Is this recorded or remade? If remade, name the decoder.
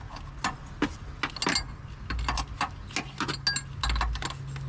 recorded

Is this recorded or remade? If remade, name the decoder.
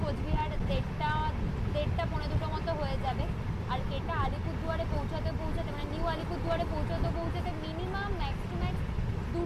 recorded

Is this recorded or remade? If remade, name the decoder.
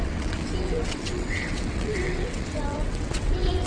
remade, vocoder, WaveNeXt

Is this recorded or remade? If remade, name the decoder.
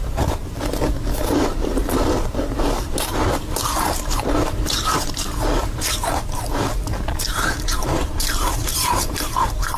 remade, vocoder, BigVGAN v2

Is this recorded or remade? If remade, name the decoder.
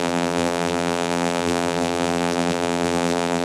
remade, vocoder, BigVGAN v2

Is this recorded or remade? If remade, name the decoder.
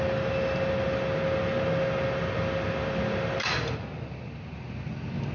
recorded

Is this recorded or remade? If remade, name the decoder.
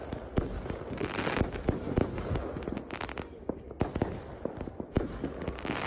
recorded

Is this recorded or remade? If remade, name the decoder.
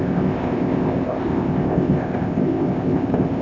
remade, codec, ZipCodec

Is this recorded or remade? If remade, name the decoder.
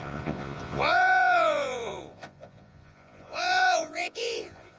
remade, vocoder, Vocos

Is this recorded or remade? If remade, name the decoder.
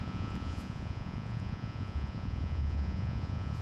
remade, vocoder, Vocos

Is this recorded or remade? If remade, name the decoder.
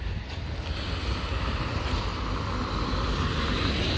recorded